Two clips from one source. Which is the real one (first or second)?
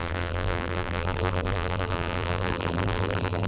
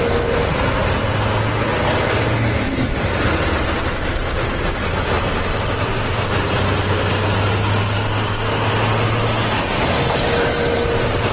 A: second